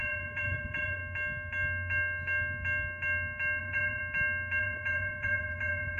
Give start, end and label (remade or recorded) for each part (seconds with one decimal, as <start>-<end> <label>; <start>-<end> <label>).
0.0-1.0 remade; 1.0-3.6 recorded; 3.6-4.0 remade; 4.0-4.6 recorded; 4.6-6.0 remade